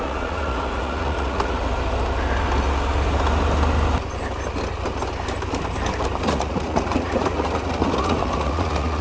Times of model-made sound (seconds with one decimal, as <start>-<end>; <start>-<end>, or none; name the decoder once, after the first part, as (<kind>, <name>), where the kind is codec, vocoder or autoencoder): 0.0-1.6 (vocoder, Vocos); 6.2-9.0